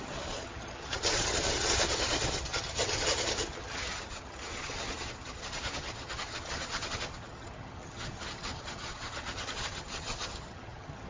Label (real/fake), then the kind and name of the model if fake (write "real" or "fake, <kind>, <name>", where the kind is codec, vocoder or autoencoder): fake, vocoder, HiFi-GAN